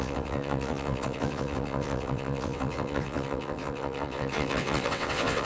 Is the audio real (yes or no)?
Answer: no